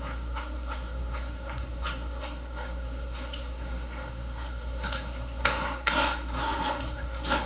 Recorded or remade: remade